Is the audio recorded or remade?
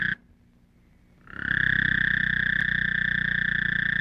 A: recorded